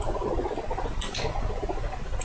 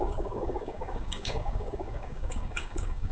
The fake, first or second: second